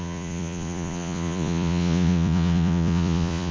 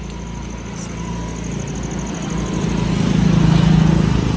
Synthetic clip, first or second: first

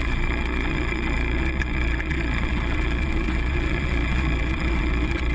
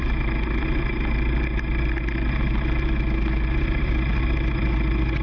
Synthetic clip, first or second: first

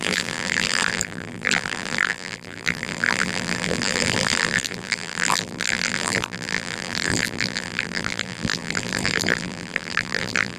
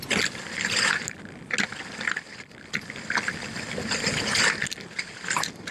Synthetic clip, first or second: first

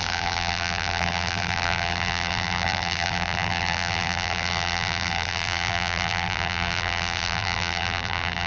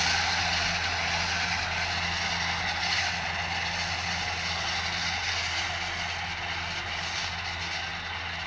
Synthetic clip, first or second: first